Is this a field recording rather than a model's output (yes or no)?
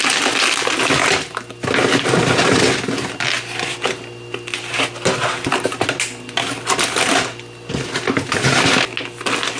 yes